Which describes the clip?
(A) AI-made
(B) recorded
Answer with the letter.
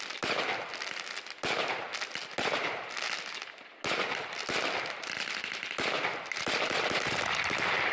B